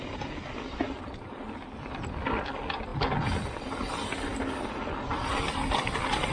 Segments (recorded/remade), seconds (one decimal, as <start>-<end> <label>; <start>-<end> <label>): 0.0-6.3 recorded